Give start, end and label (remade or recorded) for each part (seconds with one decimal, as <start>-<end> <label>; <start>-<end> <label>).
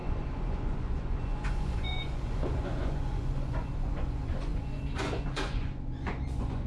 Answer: 0.0-6.7 remade